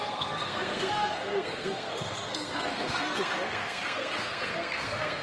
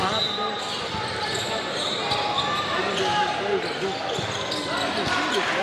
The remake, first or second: first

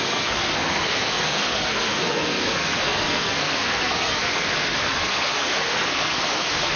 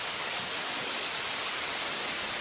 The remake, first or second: first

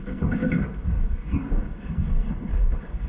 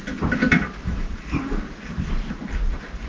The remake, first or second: first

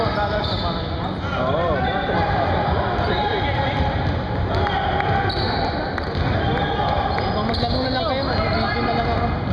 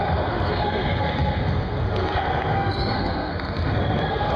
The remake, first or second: second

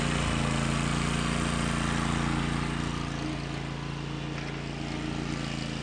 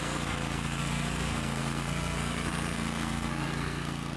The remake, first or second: second